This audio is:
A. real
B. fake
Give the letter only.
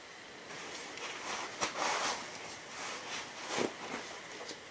A